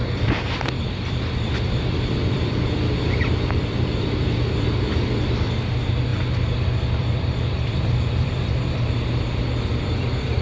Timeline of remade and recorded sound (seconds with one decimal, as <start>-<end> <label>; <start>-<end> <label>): 0.0-6.1 remade; 6.1-7.0 recorded; 7.0-10.4 remade